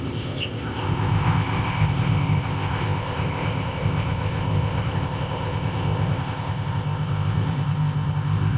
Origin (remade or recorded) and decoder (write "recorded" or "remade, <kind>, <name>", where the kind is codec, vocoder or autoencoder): remade, codec, ZipCodec